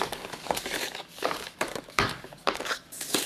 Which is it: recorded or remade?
remade